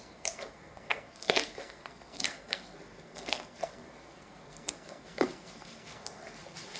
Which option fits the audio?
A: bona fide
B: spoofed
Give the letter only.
B